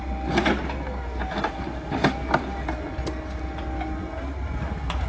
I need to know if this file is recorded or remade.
recorded